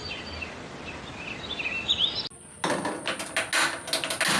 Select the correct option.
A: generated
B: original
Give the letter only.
B